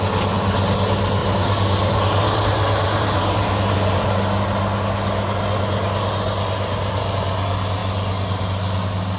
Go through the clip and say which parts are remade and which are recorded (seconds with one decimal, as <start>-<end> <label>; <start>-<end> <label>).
0.0-1.2 recorded; 1.2-4.1 remade; 4.1-9.2 recorded